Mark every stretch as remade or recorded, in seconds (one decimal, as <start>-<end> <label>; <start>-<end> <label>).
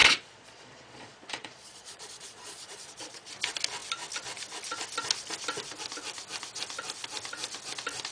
0.0-3.3 remade; 3.3-8.1 recorded